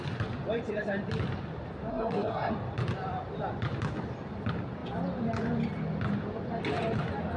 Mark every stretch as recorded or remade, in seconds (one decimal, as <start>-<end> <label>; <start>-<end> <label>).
0.0-1.9 recorded; 1.9-2.5 remade; 2.5-7.4 recorded